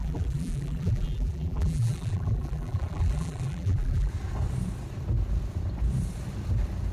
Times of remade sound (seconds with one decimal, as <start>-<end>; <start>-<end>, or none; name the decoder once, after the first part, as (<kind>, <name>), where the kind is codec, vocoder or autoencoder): 0.0-4.1 (vocoder, BigVGAN v2)